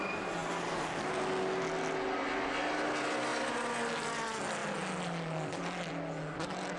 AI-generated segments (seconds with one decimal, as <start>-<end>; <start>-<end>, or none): none

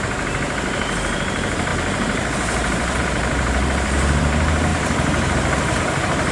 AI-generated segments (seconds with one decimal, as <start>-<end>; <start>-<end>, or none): 0.0-6.3

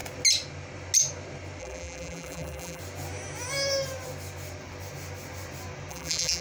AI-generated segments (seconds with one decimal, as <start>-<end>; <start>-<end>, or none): 1.6-2.8; 5.9-6.4

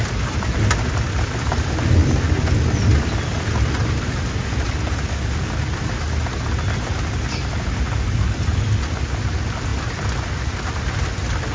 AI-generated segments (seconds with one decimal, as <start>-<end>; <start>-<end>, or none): none